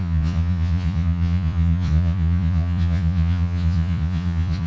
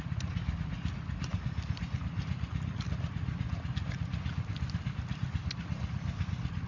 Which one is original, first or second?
second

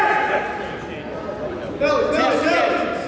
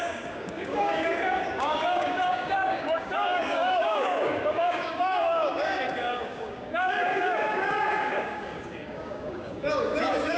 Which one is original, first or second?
first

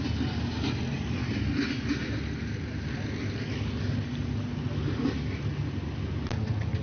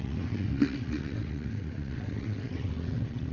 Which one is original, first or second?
first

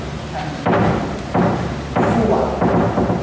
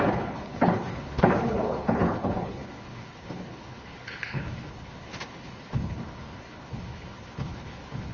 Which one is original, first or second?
first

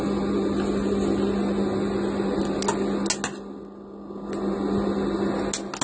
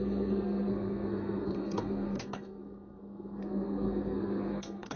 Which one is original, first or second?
first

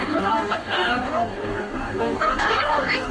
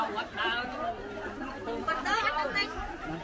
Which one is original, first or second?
second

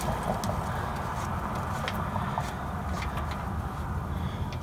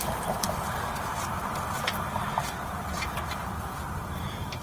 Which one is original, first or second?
first